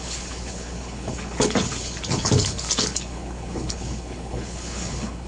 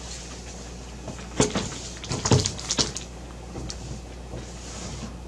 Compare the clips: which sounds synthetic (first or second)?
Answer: first